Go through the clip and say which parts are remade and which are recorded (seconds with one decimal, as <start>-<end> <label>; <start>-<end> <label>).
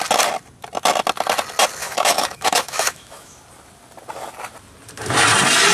0.0-1.8 recorded; 1.8-3.4 remade; 3.4-5.7 recorded